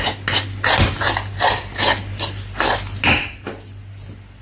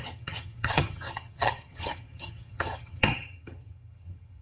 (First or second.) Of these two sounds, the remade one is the second